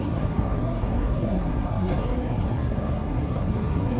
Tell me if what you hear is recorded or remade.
remade